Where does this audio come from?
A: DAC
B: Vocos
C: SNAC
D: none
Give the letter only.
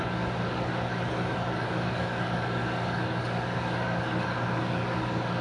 A